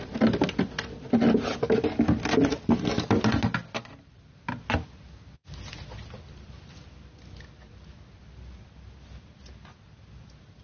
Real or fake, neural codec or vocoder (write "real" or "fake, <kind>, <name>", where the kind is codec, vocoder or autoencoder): real